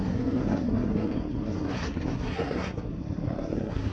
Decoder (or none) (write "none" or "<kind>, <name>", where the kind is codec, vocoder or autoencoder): codec, SNAC